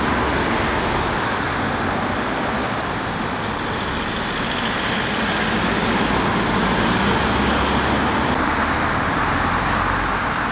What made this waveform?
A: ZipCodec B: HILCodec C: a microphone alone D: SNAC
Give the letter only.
C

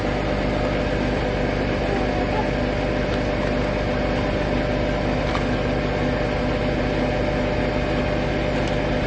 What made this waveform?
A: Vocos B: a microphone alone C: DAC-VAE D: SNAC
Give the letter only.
B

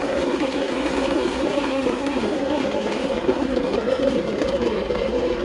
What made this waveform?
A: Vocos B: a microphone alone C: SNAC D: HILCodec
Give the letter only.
C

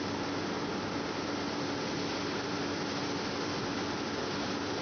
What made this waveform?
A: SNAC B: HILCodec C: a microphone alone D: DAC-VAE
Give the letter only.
C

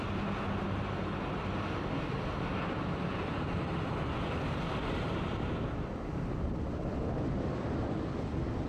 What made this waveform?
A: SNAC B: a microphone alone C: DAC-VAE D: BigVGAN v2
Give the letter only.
B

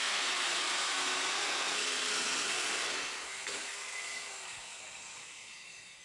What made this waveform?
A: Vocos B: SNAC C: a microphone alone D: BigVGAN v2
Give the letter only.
B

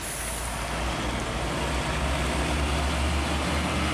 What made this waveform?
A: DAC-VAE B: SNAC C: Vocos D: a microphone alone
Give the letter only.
D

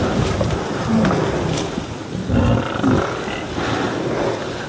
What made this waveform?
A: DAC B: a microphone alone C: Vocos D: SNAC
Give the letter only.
B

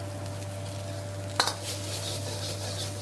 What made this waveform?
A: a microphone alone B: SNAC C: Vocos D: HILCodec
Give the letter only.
A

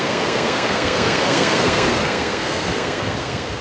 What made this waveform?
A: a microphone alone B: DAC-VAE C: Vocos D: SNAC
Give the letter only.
D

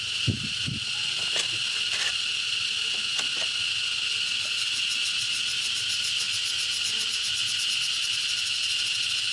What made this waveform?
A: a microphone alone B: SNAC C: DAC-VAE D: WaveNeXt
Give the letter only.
A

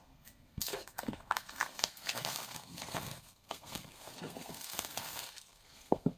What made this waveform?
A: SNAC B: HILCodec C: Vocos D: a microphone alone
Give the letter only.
A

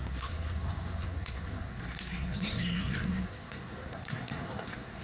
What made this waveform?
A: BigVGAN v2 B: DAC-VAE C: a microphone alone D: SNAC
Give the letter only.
D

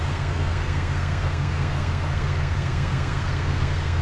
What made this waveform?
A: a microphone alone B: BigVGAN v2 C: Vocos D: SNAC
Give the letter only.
D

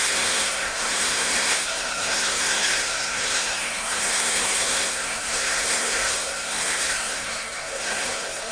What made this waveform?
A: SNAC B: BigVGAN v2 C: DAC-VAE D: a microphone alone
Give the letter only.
A